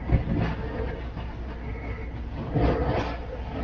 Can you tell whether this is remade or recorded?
recorded